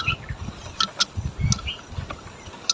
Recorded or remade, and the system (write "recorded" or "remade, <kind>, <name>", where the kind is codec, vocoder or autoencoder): recorded